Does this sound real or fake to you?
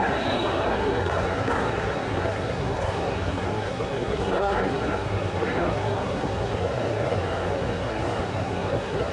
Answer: fake